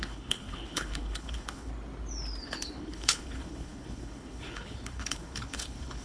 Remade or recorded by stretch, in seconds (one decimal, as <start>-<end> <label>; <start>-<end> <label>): 0.0-1.7 remade; 1.7-2.4 recorded; 2.4-6.0 remade

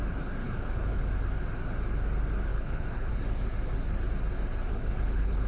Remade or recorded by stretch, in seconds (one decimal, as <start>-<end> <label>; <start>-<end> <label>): 0.0-0.4 recorded; 0.4-1.0 remade; 1.0-2.5 recorded; 2.5-3.1 remade; 3.1-4.7 recorded; 4.7-5.5 remade

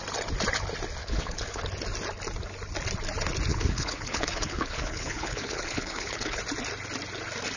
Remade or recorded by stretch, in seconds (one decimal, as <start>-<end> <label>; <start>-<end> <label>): 0.0-1.0 recorded; 1.0-1.6 remade; 1.6-3.5 recorded; 3.5-6.4 remade; 6.4-7.6 recorded

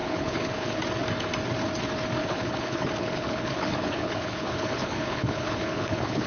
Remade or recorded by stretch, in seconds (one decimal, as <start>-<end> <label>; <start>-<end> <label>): 0.0-0.8 remade; 0.8-2.2 recorded; 2.2-6.3 remade

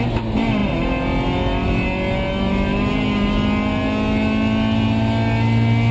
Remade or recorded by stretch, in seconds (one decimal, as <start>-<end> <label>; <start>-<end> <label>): 0.0-5.9 recorded

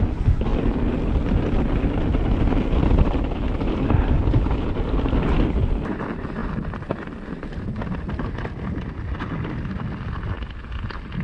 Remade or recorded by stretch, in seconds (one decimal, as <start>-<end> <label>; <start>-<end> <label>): 0.0-11.2 recorded

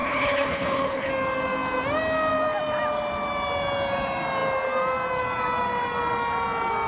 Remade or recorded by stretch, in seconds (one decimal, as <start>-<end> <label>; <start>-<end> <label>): 0.0-1.1 remade; 1.1-6.9 recorded